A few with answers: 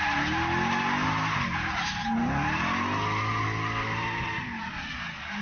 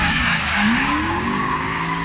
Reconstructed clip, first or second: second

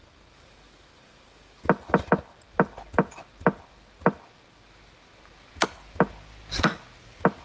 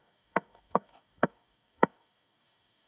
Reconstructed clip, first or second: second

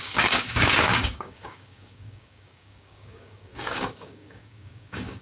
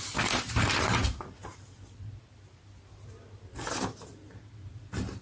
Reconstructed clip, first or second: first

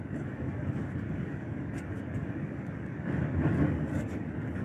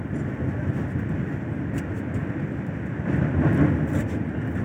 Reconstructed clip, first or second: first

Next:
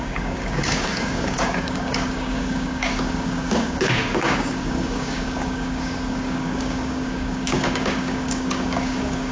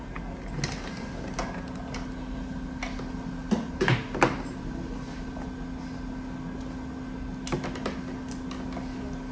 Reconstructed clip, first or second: first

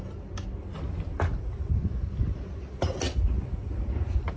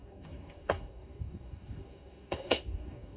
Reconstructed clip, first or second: second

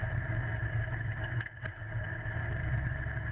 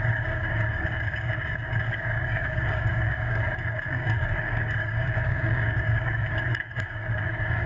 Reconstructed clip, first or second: second